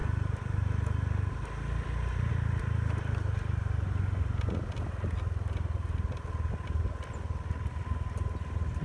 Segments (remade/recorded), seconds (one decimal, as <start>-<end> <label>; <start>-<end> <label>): 0.0-8.8 recorded

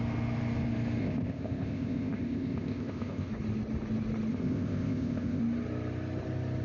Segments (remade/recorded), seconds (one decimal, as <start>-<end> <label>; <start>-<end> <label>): 0.0-1.0 recorded; 1.0-3.3 remade; 3.3-4.3 recorded; 4.3-5.4 remade; 5.4-6.6 recorded